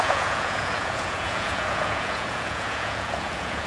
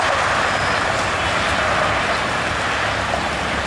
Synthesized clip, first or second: first